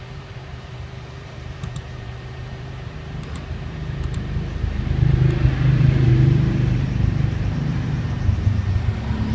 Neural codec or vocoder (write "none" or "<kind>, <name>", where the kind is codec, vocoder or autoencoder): vocoder, BigVGAN v2